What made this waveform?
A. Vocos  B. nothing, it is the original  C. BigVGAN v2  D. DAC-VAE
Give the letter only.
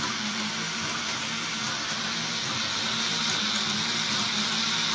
B